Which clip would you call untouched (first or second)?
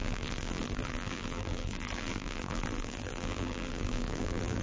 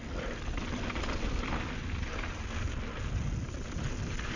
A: second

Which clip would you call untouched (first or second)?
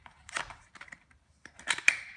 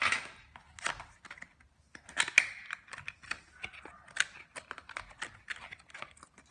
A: second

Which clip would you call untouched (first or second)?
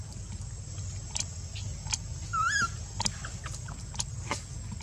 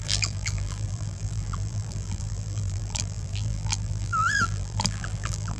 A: first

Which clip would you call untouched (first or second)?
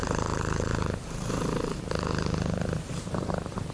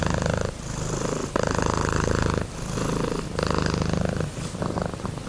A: second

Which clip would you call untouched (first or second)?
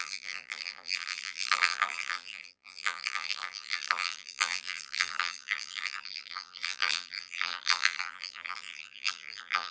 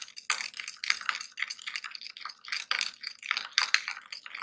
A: second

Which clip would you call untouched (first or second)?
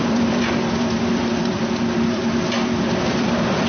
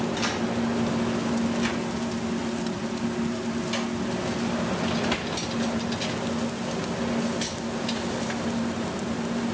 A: second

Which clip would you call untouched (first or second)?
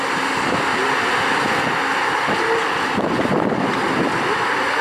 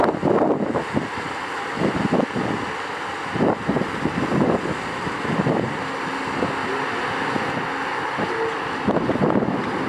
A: second